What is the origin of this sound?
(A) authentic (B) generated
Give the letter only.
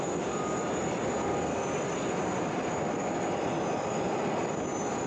A